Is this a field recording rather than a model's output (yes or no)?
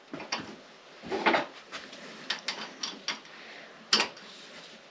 yes